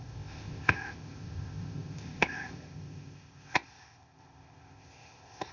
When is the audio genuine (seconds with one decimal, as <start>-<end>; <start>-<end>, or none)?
none